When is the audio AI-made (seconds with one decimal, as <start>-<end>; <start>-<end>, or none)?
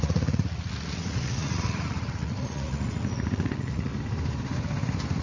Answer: 0.0-3.9